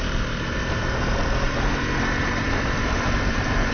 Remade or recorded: remade